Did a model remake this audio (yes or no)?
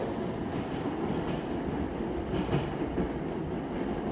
no